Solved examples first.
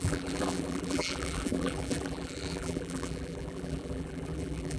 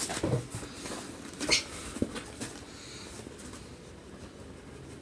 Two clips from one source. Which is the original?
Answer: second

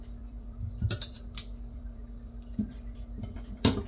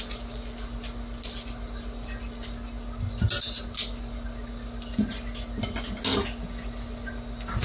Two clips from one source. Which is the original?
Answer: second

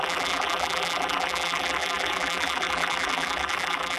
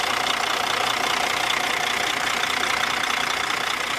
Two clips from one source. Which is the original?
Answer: second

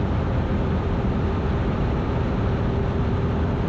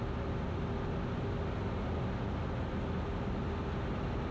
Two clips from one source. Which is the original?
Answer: second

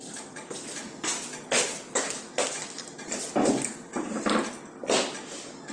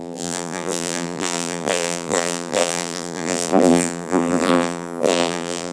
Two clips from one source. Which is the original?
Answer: first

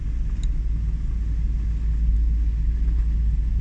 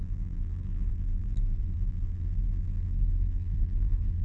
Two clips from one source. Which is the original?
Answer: first